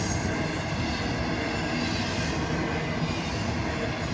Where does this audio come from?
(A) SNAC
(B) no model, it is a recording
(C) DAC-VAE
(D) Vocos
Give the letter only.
B